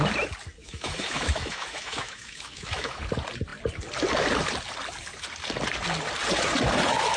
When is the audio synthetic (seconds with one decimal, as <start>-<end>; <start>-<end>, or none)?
0.6-3.0